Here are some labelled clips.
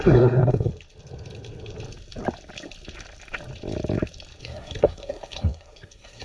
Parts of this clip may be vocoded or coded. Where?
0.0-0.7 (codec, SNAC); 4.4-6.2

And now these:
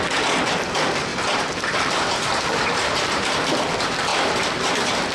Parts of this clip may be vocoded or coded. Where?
1.1-3.3 (vocoder, BigVGAN v2); 4.1-5.1

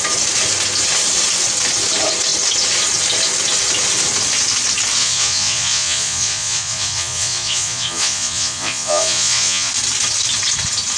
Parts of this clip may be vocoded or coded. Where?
5.0-9.7 (vocoder, Vocos)

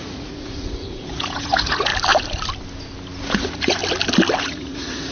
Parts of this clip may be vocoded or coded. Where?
0.0-1.9 (vocoder, Vocos); 3.2-3.8; 4.4-5.1

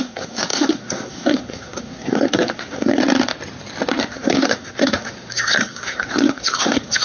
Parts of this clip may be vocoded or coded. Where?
0.0-3.0 (codec, SNAC); 4.0-7.0